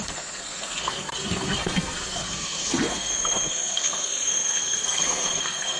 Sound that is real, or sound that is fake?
fake